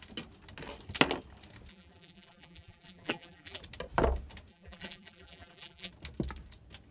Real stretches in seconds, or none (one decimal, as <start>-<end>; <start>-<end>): 0.0-1.7; 3.6-4.5; 5.9-6.9